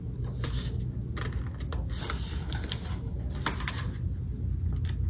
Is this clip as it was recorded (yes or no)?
yes